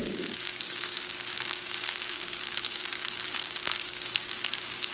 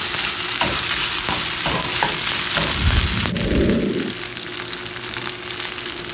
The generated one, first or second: first